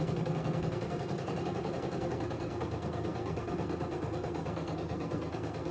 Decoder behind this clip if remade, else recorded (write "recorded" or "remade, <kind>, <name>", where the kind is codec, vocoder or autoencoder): remade, codec, SNAC